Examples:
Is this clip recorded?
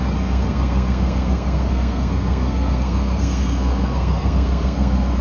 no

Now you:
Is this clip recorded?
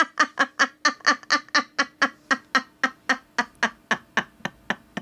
yes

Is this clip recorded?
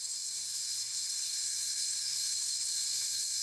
no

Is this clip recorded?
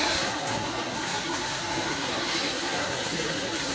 no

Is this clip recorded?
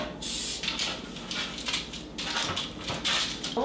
yes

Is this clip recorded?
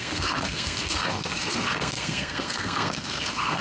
no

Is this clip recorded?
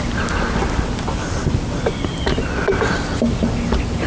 yes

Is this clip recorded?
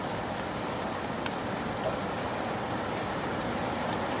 yes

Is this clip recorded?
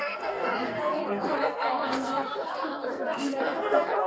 no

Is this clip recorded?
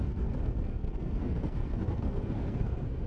no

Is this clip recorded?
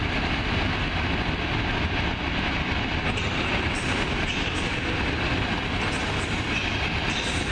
yes